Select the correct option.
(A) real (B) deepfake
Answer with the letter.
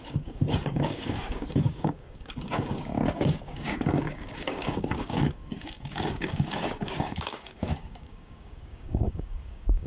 B